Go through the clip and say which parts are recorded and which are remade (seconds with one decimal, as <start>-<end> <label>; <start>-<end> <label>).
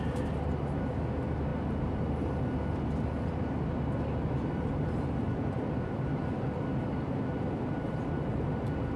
0.0-9.0 recorded